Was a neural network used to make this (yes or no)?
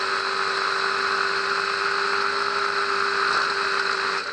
no